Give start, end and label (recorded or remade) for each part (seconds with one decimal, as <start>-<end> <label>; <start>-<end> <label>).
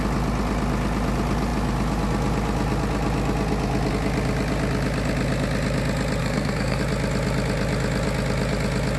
0.0-6.2 recorded; 6.2-6.8 remade; 6.8-9.0 recorded